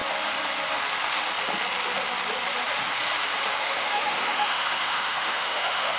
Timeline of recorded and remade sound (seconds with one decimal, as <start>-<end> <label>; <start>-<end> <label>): 0.0-3.6 recorded; 3.6-6.0 remade